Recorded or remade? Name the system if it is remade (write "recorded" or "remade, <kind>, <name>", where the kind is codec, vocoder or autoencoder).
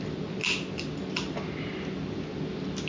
recorded